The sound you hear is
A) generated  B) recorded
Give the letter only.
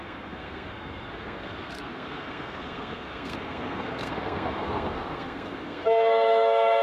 A